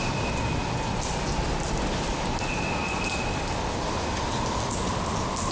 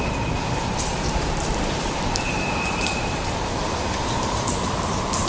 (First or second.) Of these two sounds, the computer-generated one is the second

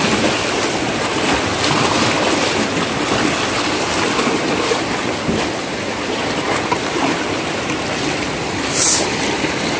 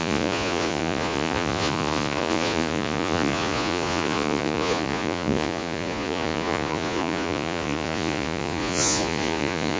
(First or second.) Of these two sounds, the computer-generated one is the second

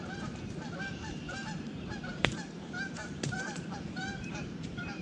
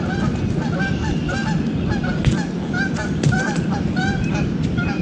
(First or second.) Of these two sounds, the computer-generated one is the first